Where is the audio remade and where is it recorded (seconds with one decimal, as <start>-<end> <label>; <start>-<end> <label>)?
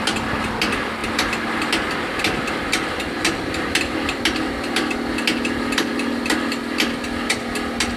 0.0-8.0 recorded